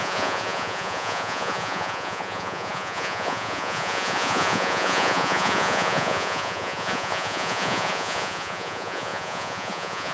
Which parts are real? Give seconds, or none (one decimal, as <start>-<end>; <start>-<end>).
none